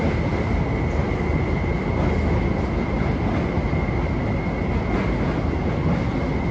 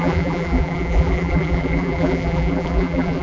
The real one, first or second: first